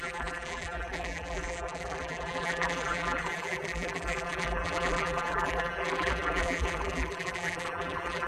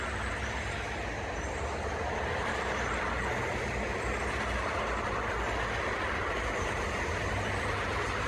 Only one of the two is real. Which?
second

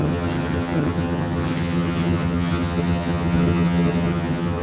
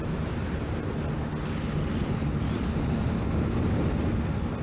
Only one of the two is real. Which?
second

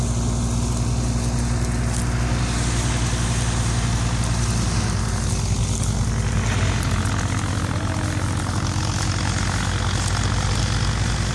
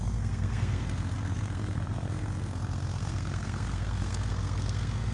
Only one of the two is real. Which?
first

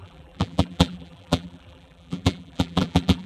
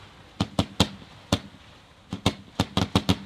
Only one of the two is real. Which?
second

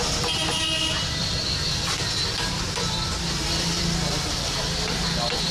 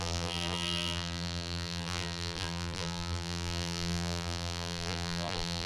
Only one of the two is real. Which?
first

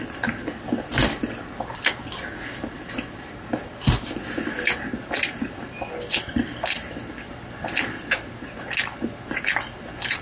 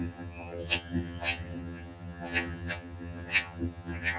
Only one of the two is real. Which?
first